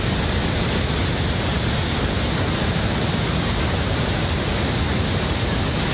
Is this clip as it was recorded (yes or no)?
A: yes